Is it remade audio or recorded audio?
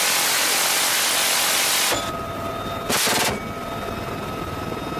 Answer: recorded